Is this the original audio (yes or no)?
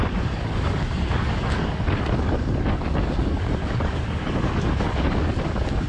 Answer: no